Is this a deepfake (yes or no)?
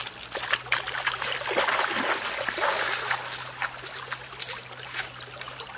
no